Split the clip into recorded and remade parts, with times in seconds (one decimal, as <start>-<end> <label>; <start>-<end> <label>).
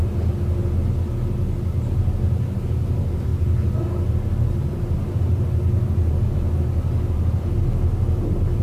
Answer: 0.0-8.6 recorded